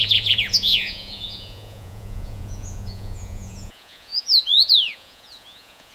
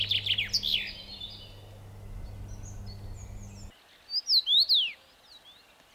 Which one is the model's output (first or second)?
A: first